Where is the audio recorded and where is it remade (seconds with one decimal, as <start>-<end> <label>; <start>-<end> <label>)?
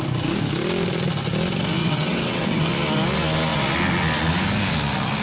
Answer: 0.0-1.8 recorded; 1.8-2.7 remade; 2.7-5.2 recorded